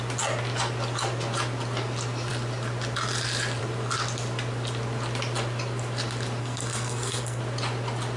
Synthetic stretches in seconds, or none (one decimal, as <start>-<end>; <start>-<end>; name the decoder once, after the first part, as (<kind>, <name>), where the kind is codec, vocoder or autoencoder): 6.4-7.4 (codec, SNAC)